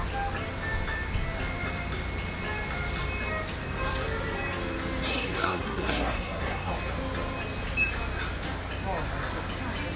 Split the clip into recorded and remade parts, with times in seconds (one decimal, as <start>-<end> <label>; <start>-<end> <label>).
0.0-5.1 recorded; 5.1-6.7 remade; 6.7-10.0 recorded